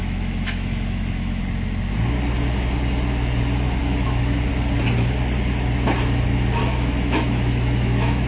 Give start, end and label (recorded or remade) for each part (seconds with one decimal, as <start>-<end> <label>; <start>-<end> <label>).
0.0-1.4 remade; 1.4-3.8 recorded; 3.8-4.5 remade; 4.5-6.6 recorded; 6.6-8.3 remade